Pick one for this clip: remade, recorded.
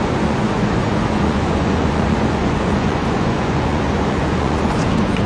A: remade